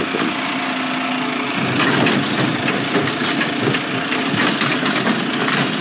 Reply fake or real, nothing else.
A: real